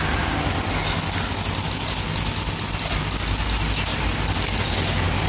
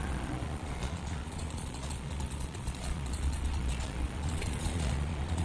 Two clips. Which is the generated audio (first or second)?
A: second